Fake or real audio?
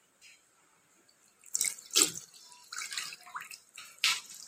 real